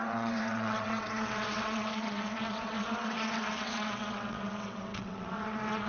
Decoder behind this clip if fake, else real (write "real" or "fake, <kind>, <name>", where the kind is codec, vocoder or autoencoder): fake, vocoder, WaveNeXt